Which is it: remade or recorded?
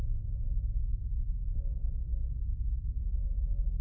recorded